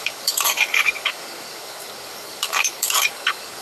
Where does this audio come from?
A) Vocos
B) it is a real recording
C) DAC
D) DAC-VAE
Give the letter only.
C